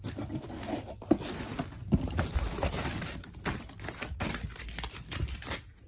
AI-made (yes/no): no